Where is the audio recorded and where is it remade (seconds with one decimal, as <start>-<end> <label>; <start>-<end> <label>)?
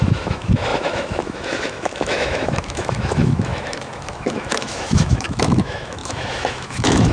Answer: 0.0-7.1 remade